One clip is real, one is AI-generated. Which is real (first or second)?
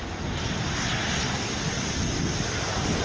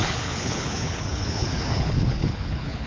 first